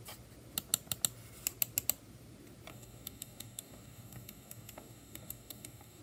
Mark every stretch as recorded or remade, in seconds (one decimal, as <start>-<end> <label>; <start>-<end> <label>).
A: 0.0-2.7 recorded; 2.7-6.0 remade